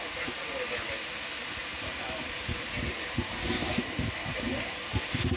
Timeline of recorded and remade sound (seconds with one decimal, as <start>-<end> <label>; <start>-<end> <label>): 0.0-1.6 recorded; 1.6-4.5 remade; 4.5-5.4 recorded